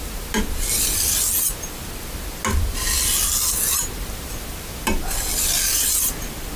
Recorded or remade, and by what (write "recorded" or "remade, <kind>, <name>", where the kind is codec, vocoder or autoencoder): recorded